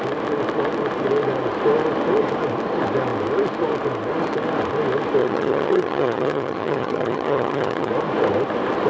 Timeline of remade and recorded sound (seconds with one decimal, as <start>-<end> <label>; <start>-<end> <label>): 0.0-5.2 recorded; 5.2-7.9 remade; 7.9-8.9 recorded